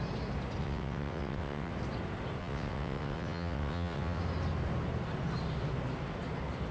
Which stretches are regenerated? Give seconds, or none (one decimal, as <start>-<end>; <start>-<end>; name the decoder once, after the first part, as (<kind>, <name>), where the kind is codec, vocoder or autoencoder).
0.6-1.7 (vocoder, WaveNeXt); 2.4-4.2